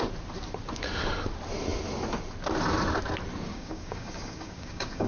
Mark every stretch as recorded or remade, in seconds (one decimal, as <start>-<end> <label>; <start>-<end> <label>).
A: 0.0-3.5 recorded; 3.5-5.1 remade